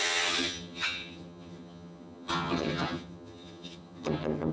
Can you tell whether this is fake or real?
fake